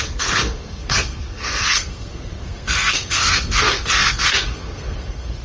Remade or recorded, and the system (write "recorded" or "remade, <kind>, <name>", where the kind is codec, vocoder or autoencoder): remade, codec, SNAC